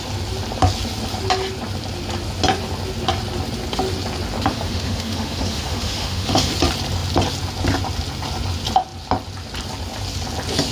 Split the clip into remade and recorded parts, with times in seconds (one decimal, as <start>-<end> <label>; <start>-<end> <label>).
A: 0.0-4.5 recorded; 4.5-6.5 remade; 6.5-10.7 recorded